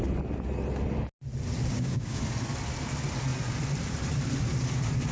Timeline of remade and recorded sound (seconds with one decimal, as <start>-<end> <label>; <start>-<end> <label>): 0.0-1.7 recorded; 1.7-2.2 remade; 2.2-5.1 recorded